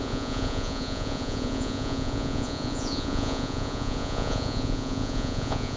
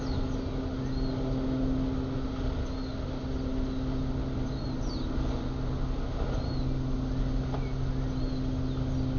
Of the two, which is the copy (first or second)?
first